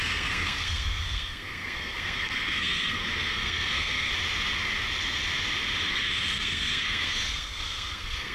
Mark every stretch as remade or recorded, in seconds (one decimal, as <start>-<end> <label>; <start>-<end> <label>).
0.0-4.1 remade; 4.1-5.9 recorded; 5.9-8.3 remade